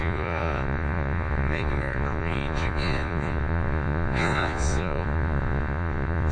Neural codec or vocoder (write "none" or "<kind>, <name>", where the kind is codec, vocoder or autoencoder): vocoder, Vocos